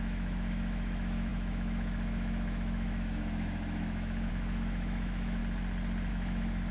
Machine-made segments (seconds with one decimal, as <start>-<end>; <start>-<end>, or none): 0.0-5.4; 6.1-6.7